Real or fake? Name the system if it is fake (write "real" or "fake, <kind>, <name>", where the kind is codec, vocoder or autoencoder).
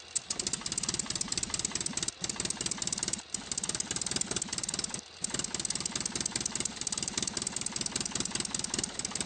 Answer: real